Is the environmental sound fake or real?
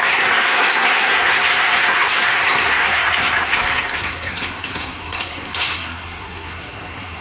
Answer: fake